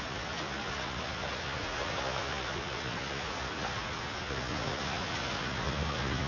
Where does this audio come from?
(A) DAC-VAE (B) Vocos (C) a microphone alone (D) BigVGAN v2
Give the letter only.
B